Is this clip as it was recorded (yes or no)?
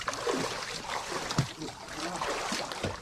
yes